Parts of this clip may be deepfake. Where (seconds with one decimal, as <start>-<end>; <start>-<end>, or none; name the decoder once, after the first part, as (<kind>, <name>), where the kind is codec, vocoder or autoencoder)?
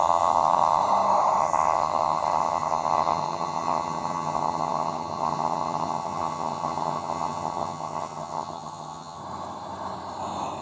0.0-0.8 (vocoder, HiFi-GAN); 1.4-9.2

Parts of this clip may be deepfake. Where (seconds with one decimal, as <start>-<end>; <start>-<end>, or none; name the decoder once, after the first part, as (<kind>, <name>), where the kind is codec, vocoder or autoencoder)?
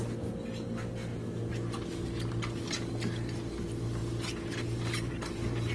none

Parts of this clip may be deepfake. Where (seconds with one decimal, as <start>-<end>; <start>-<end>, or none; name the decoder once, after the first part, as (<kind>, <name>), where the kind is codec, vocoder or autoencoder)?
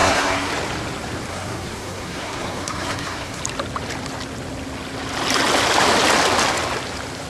0.0-0.5 (codec, SNAC); 1.3-3.4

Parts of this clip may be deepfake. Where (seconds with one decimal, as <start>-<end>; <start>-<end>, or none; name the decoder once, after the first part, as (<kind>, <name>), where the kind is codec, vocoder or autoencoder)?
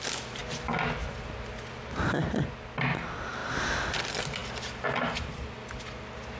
none